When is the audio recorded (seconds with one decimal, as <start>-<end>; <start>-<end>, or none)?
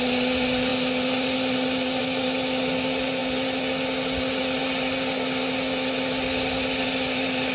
0.0-7.5